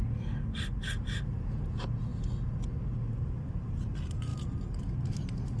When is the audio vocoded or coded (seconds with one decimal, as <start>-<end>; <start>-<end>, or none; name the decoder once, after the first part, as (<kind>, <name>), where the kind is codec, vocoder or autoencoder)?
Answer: none